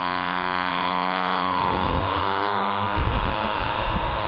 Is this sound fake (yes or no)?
yes